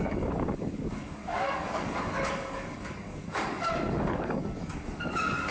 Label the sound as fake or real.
fake